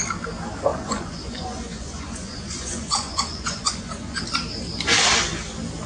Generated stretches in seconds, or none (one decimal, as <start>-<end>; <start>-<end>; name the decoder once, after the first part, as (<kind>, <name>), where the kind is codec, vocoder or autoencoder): 0.7-4.2 (vocoder, Vocos)